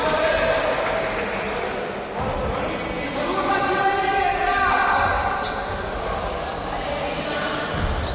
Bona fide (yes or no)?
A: yes